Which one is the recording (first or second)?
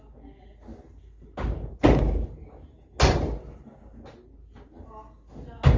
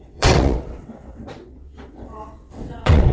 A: first